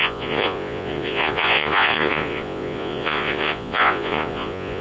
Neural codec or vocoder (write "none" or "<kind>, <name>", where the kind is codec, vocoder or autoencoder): vocoder, Vocos